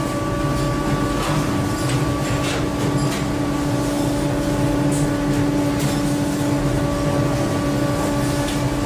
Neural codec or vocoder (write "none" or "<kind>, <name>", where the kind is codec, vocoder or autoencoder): none